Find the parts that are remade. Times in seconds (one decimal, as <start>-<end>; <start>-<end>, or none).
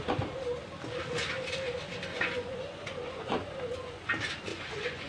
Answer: 2.1-4.1; 4.5-5.1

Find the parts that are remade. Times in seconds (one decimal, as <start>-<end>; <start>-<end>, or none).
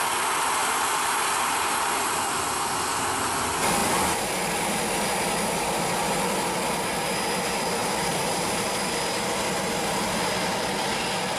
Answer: 0.6-2.2; 7.8-8.7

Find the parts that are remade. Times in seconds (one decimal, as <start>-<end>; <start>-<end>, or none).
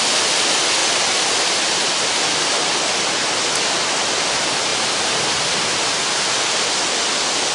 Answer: 4.7-6.3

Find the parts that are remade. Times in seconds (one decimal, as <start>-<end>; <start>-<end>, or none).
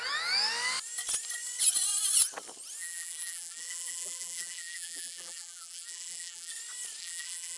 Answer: 2.8-6.5; 7.0-7.6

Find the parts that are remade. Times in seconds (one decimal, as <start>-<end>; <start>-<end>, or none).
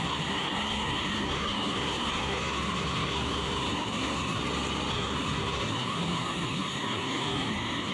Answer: 0.0-4.4; 4.9-7.9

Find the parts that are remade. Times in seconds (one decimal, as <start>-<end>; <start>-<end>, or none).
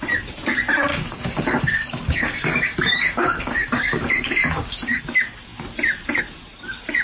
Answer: 0.9-5.0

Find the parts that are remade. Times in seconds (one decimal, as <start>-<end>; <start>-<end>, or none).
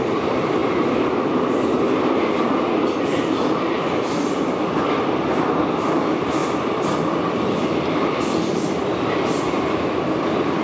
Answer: none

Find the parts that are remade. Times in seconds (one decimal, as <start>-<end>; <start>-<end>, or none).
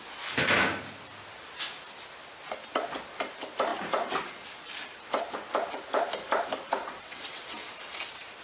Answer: 6.8-7.7